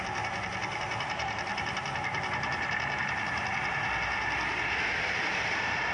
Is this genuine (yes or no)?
yes